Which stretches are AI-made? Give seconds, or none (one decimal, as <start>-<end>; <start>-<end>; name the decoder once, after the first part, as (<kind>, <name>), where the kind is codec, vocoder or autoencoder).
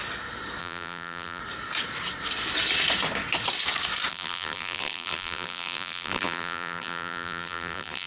0.6-1.4 (vocoder, BigVGAN v2); 4.1-8.1